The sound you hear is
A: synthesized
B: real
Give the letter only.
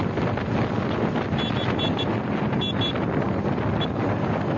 B